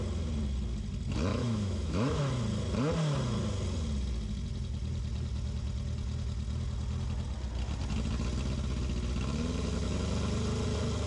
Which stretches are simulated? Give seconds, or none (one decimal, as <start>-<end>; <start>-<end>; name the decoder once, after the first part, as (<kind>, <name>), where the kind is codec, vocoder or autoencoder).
1.3-2.2 (autoencoder, DAC-VAE)